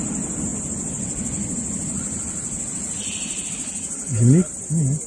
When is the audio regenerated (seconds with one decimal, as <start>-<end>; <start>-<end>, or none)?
none